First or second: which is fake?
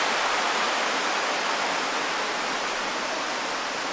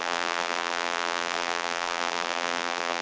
second